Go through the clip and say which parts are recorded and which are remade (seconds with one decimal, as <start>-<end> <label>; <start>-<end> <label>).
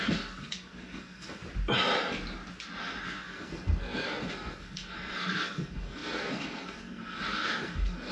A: 0.0-1.4 remade; 1.4-2.8 recorded; 2.8-8.1 remade